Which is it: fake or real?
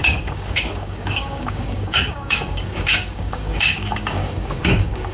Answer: fake